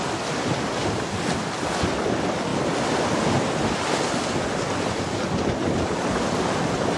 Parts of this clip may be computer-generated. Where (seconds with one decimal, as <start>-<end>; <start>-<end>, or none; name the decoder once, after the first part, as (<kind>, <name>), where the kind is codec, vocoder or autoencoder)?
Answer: none